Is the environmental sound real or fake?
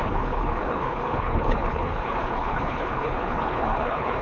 fake